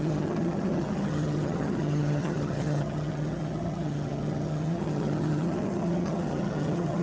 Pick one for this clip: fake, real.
fake